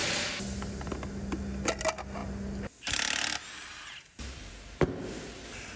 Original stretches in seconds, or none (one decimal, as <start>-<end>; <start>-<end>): 0.0-5.8